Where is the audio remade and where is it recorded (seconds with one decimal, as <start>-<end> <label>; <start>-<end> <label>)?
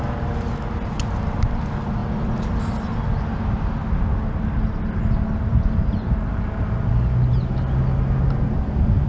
0.0-9.1 recorded